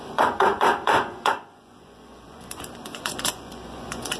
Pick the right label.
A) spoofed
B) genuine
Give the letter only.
A